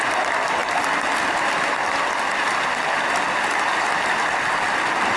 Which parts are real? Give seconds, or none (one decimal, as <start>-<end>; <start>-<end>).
0.0-5.2